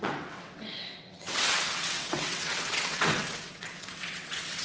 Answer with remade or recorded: remade